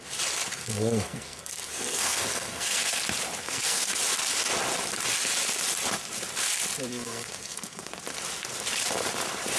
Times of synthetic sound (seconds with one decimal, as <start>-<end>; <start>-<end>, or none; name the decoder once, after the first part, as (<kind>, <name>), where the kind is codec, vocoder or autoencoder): 0.5-3.0 (codec, SNAC); 3.4-4.0; 6.9-7.9